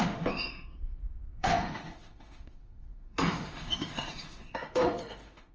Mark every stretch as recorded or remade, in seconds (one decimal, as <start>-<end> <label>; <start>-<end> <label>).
0.0-5.5 remade